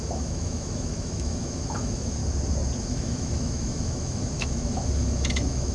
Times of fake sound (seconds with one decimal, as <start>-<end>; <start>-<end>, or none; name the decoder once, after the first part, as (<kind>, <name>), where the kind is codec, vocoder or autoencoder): 0.0-2.2 (autoencoder, DAC-VAE); 2.8-5.7